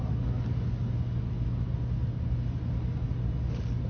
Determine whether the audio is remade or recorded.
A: recorded